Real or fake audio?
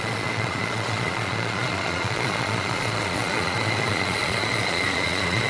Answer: fake